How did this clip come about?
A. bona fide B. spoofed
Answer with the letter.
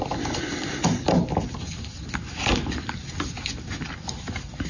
A